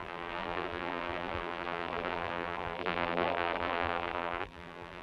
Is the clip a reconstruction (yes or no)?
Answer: yes